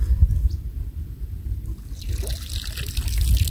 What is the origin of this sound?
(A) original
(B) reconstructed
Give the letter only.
A